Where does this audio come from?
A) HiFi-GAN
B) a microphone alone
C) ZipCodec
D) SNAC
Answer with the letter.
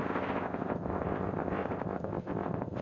C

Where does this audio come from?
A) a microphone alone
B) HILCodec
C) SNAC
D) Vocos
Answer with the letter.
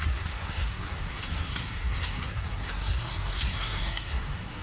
C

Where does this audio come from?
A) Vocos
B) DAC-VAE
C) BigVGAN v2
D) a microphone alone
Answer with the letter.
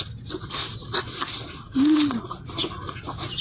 D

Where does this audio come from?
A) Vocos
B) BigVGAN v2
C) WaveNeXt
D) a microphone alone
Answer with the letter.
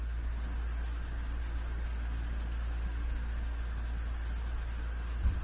D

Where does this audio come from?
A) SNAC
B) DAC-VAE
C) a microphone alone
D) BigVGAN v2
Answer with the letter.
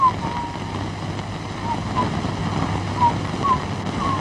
C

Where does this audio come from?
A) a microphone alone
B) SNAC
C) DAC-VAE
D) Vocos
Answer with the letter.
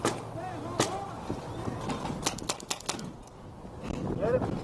A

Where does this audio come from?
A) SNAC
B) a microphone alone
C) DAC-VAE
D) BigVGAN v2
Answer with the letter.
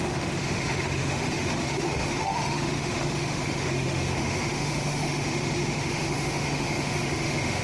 C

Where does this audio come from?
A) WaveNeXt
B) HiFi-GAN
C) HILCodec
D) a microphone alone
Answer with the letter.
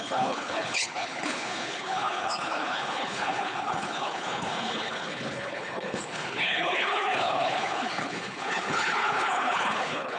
C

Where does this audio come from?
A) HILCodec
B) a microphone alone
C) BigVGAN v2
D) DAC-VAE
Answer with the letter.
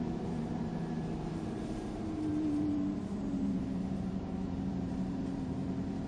C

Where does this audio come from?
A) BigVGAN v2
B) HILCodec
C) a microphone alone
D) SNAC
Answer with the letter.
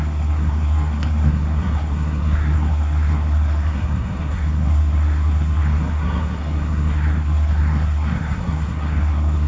D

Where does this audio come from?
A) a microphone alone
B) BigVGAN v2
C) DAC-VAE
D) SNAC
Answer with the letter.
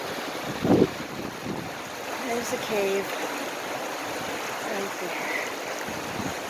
A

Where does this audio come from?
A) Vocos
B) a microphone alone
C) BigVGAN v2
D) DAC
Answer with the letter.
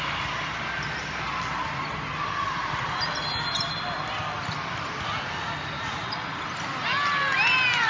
B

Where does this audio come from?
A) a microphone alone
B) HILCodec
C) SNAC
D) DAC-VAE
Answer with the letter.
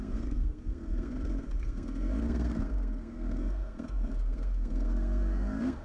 C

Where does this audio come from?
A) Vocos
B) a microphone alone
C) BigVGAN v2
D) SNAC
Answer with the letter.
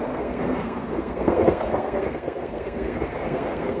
D